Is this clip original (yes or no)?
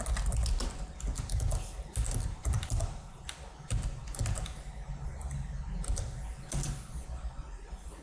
yes